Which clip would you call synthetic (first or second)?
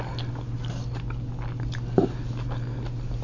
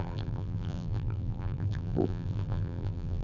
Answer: second